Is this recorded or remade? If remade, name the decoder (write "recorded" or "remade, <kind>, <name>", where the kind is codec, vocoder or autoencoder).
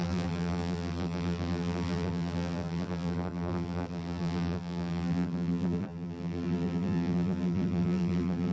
remade, vocoder, BigVGAN v2